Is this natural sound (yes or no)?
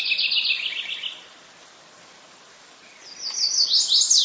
yes